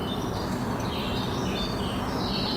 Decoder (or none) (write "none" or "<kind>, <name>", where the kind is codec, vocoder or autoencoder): none